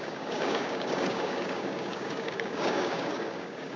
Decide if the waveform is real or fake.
fake